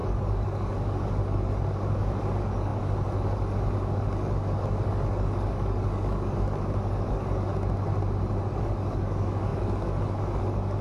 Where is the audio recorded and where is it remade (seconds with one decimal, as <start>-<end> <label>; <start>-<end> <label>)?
0.0-7.5 remade; 7.5-8.4 recorded; 8.4-10.8 remade